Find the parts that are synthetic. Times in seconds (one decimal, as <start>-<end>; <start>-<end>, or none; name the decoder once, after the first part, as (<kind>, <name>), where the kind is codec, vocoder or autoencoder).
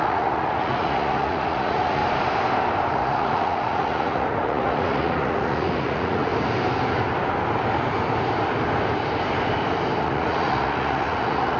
0.0-2.0 (vocoder, Vocos); 2.9-6.3; 10.0-11.6